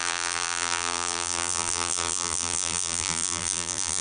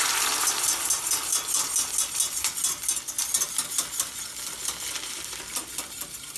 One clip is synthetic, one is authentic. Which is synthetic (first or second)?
first